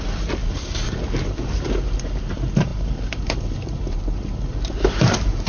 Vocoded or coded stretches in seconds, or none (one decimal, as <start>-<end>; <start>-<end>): 0.0-5.5